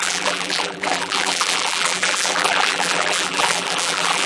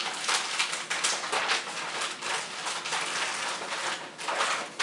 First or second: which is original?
second